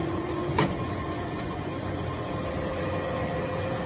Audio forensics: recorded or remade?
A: remade